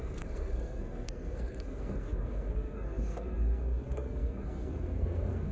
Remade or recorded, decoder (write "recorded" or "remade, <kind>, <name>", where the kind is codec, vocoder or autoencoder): remade, codec, SNAC